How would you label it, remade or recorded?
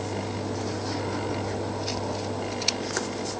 recorded